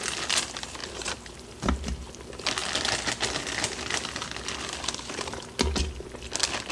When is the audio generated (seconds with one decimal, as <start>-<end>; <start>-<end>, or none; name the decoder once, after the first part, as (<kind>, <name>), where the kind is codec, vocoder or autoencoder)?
0.8-2.1 (vocoder, BigVGAN v2)